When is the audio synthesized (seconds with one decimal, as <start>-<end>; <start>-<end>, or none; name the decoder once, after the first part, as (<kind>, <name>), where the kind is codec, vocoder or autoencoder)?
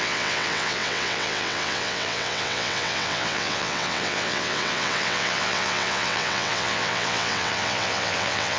0.0-8.6 (vocoder, WaveNeXt)